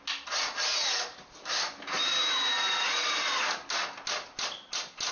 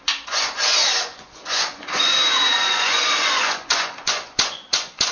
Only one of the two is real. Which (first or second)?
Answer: first